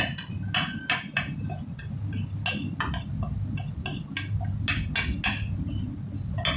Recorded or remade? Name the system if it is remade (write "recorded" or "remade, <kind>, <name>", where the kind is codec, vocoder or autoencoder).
recorded